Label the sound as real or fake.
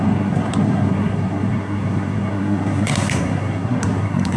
fake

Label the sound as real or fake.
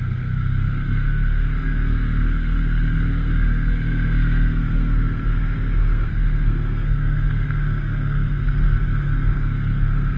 fake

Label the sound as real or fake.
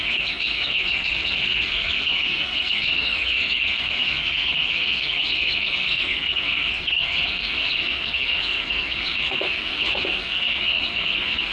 fake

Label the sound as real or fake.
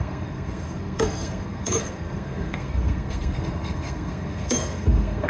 fake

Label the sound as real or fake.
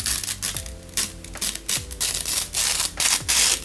real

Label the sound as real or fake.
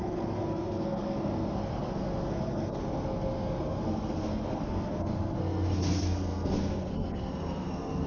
fake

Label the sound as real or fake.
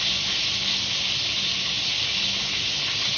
real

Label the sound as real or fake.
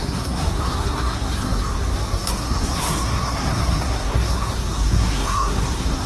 fake